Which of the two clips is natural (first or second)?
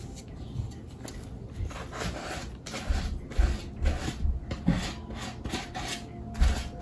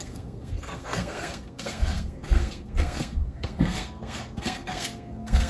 first